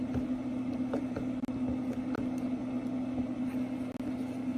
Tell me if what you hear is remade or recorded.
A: recorded